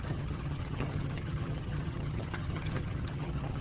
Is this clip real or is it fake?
fake